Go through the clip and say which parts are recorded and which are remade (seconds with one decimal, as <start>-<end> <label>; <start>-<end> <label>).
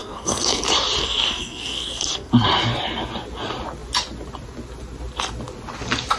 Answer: 0.0-0.6 remade; 0.6-1.0 recorded; 1.0-2.3 remade; 2.3-6.2 recorded